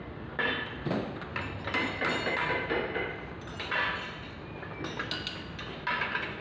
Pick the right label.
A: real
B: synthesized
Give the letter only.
A